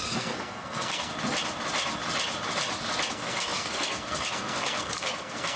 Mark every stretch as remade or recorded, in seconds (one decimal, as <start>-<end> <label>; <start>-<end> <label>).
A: 0.0-1.1 remade; 1.1-3.1 recorded; 3.1-5.6 remade